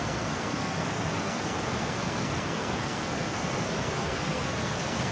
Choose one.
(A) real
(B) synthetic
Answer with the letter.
B